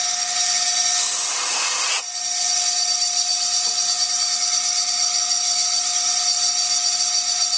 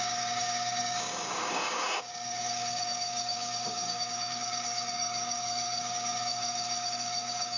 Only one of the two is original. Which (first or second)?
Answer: first